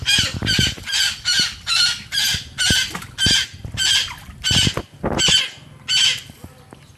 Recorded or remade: recorded